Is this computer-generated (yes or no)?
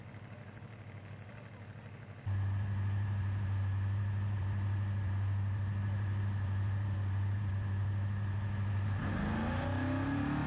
no